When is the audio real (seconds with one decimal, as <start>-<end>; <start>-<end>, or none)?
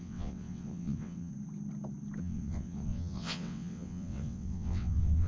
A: 1.3-2.2